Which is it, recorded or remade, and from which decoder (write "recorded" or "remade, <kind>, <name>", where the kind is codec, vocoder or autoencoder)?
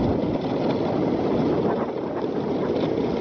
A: remade, vocoder, BigVGAN v2